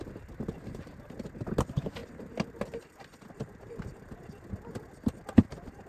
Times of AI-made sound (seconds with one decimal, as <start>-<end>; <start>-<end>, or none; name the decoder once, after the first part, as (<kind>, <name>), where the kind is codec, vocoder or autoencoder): none

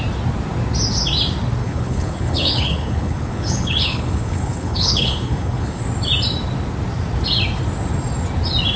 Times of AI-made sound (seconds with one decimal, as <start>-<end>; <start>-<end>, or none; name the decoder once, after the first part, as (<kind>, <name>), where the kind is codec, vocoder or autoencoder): 1.6-5.8 (codec, HILCodec)

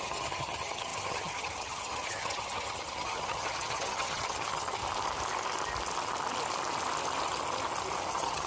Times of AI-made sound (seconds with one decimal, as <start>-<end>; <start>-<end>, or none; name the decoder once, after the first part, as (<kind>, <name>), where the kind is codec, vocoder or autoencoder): 0.0-4.8 (vocoder, HiFi-GAN); 8.1-8.5

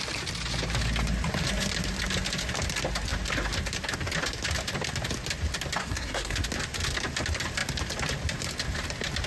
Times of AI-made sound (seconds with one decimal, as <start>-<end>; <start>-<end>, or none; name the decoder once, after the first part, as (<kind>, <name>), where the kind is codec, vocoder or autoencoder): 5.8-6.4 (codec, SNAC)

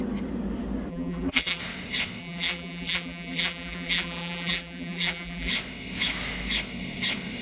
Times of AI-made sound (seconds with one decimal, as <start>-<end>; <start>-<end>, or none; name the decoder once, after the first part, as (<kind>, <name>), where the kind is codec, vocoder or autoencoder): 0.9-1.6 (vocoder, BigVGAN v2); 2.2-5.5

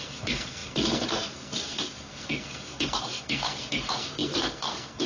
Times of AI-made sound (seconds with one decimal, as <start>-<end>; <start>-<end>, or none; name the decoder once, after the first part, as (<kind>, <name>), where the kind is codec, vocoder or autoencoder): 0.0-5.1 (codec, SNAC)